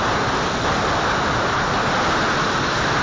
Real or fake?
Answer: fake